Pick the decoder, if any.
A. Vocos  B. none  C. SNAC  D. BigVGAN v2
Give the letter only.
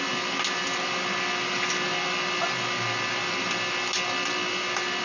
B